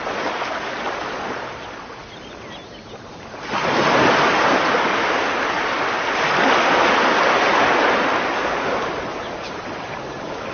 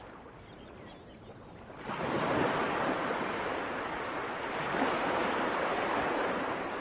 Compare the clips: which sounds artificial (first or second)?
second